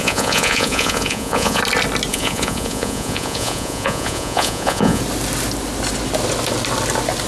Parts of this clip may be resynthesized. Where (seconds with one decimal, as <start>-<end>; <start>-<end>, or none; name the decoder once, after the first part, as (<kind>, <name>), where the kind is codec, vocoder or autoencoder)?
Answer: 0.0-1.6 (vocoder, Vocos); 2.1-5.0